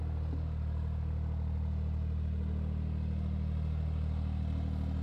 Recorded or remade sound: recorded